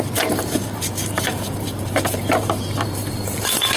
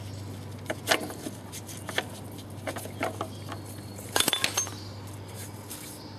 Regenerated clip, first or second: first